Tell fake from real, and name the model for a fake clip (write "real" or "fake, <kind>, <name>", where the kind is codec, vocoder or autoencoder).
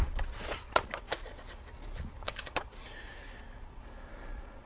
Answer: fake, vocoder, Vocos